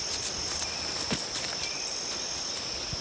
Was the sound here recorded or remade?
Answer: recorded